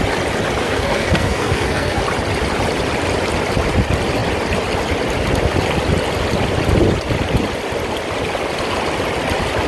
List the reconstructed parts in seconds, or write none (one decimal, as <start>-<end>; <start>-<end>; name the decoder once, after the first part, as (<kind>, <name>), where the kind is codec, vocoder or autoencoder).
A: 0.6-2.0 (codec, SNAC)